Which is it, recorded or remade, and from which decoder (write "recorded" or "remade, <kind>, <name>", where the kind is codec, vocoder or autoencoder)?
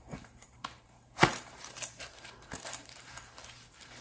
remade, vocoder, BigVGAN v2